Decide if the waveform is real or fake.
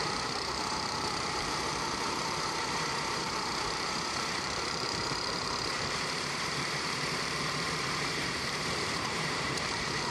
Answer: fake